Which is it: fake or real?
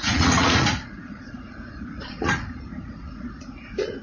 fake